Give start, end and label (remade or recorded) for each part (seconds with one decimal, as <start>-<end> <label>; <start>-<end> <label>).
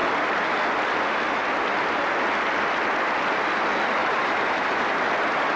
0.0-4.0 recorded; 4.0-4.9 remade; 4.9-5.6 recorded